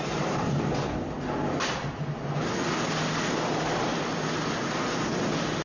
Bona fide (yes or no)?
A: yes